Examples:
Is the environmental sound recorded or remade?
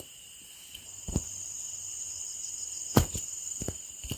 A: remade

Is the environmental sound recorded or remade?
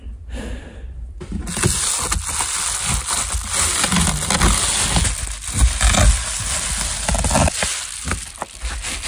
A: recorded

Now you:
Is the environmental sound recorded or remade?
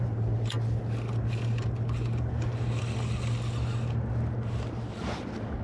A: recorded